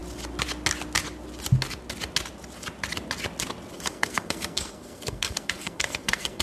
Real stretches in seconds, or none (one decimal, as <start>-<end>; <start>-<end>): 0.0-3.7